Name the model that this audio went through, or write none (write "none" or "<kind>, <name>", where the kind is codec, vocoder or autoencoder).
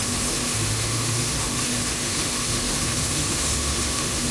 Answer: autoencoder, DAC-VAE